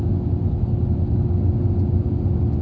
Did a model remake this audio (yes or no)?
no